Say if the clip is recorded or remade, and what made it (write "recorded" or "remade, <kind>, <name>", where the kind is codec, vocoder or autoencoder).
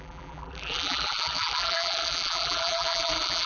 remade, vocoder, BigVGAN v2